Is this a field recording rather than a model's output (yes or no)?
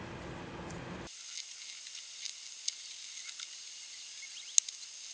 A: yes